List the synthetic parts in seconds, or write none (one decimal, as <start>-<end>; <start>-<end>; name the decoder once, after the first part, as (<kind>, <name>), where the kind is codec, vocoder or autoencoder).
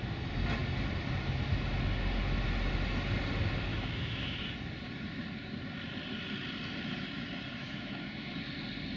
3.7-4.4 (autoencoder, DAC-VAE); 7.6-8.3